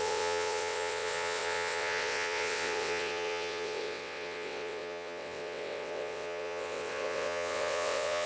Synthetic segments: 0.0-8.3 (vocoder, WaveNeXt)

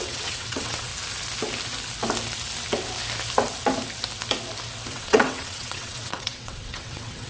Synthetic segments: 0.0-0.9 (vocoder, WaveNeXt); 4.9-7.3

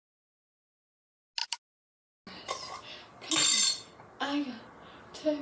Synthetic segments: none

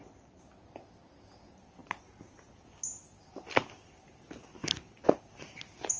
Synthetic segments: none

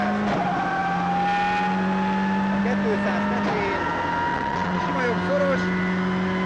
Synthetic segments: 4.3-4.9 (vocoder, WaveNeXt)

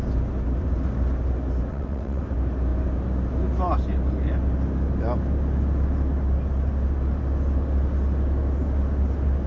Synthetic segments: 1.7-2.2 (vocoder, WaveNeXt)

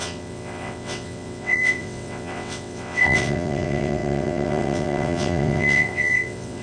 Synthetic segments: 0.0-6.6 (vocoder, WaveNeXt)

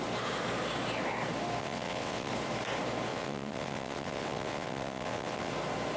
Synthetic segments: 1.6-2.3 (vocoder, WaveNeXt); 3.1-5.5